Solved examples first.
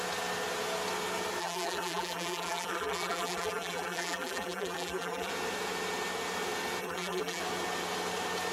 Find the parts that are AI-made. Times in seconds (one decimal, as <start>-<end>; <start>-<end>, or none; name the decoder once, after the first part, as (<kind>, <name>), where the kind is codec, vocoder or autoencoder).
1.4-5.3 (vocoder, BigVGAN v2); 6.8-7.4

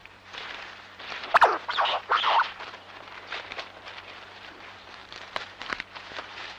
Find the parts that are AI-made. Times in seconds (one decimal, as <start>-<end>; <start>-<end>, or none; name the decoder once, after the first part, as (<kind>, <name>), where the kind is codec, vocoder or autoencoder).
0.0-6.6 (vocoder, BigVGAN v2)

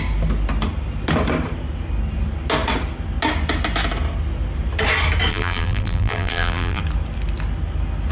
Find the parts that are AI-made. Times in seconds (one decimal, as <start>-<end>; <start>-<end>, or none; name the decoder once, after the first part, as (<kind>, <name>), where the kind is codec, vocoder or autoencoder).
5.3-6.8 (vocoder, BigVGAN v2)